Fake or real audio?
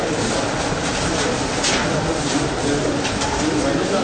real